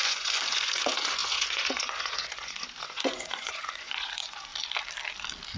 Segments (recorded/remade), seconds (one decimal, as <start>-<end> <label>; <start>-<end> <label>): 0.0-4.5 remade; 4.5-5.6 recorded